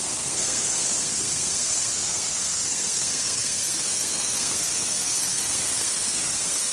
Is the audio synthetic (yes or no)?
yes